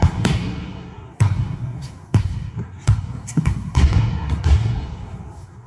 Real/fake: fake